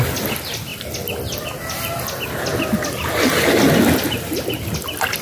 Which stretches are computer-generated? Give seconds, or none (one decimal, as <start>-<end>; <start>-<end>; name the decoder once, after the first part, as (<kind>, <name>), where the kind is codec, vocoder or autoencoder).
none